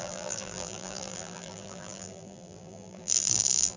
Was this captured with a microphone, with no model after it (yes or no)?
no